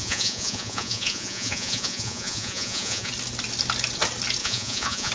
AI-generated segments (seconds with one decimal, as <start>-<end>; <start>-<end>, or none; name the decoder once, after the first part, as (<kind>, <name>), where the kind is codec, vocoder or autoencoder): 0.0-3.1 (vocoder, Vocos); 4.4-5.1